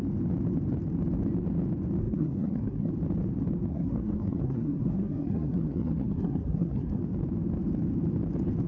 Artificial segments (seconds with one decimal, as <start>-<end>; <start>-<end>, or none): 2.0-2.9; 3.7-7.0